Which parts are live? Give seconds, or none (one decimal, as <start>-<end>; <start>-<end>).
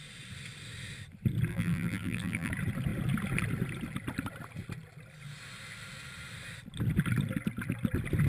0.0-1.5; 2.5-8.3